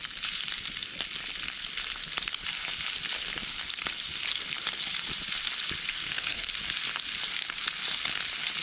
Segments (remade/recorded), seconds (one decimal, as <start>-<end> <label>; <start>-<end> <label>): 0.0-5.9 recorded; 5.9-6.5 remade; 6.5-8.6 recorded